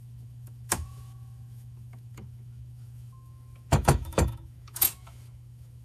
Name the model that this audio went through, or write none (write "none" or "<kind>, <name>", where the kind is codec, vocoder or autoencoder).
autoencoder, DAC-VAE